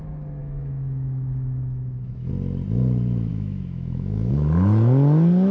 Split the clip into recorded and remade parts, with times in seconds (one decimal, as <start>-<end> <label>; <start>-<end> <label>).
0.0-0.4 recorded; 0.4-2.3 remade; 2.3-3.3 recorded; 3.3-4.3 remade; 4.3-5.5 recorded